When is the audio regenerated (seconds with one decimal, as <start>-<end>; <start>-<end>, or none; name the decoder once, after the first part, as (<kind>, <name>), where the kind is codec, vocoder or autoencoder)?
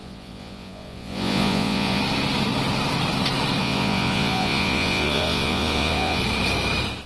0.0-2.0 (vocoder, Vocos); 3.6-6.2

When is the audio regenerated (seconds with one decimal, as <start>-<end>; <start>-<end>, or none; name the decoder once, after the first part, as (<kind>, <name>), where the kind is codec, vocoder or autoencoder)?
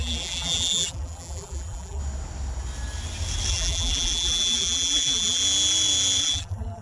0.0-2.0 (vocoder, BigVGAN v2); 3.5-5.4; 6.2-6.8